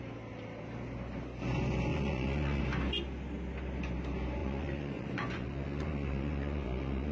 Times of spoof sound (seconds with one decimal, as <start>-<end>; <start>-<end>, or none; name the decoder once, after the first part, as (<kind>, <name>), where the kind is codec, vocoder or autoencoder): 1.9-2.6 (vocoder, Vocos); 4.4-7.1